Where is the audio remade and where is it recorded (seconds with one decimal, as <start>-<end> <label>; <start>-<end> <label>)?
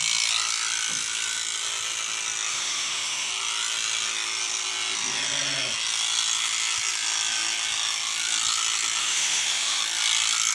0.0-2.5 recorded; 2.5-3.3 remade; 3.3-9.0 recorded; 9.0-9.8 remade; 9.8-10.5 recorded